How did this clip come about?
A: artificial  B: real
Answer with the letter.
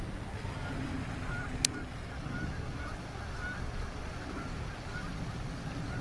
B